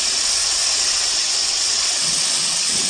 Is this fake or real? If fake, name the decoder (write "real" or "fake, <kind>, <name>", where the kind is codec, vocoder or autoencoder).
fake, vocoder, WaveNeXt